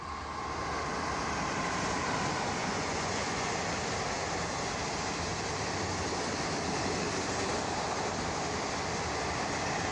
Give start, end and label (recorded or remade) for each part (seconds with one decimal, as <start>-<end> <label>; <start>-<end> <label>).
0.0-2.6 recorded; 2.6-3.5 remade; 3.5-9.9 recorded